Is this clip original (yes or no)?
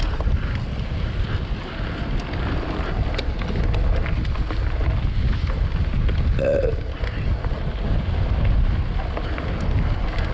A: yes